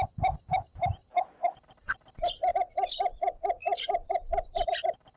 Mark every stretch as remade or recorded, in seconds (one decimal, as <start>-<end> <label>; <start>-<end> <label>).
0.0-1.1 remade; 1.1-1.9 recorded; 1.9-2.5 remade; 2.5-4.1 recorded; 4.1-5.2 remade

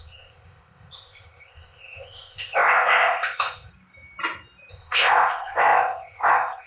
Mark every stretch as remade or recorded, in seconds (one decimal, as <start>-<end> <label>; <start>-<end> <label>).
0.0-3.7 remade; 3.7-4.7 recorded; 4.7-6.7 remade

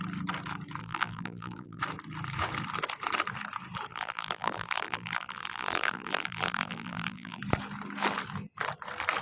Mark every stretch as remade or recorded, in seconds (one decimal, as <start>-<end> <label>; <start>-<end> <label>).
0.0-0.8 recorded; 0.8-1.8 remade; 1.8-3.9 recorded; 3.9-7.4 remade; 7.4-9.2 recorded

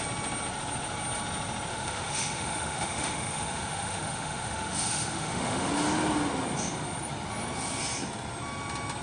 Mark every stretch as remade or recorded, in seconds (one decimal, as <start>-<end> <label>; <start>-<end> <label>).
0.0-1.7 recorded; 1.7-5.7 remade; 5.7-9.0 recorded

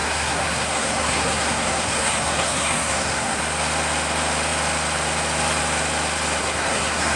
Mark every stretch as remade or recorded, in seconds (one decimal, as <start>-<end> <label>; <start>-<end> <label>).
0.0-3.4 remade; 3.4-6.4 recorded; 6.4-7.2 remade

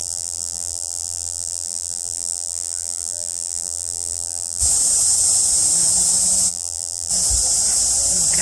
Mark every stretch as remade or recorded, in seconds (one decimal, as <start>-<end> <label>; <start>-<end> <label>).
0.0-4.6 remade; 4.6-6.5 recorded; 6.5-7.1 remade; 7.1-8.4 recorded

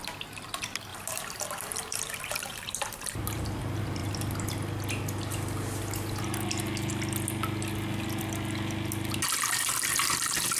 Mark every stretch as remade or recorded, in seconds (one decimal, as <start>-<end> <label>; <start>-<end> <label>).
0.0-0.9 recorded; 0.9-3.6 remade; 3.6-10.6 recorded